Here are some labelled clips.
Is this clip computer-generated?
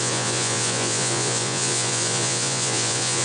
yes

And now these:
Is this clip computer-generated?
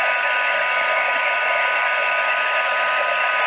yes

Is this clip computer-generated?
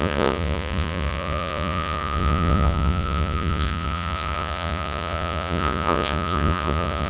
yes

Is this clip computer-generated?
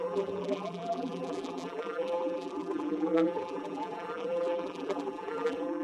yes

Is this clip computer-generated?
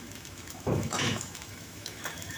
yes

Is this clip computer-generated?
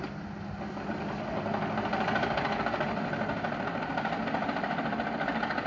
no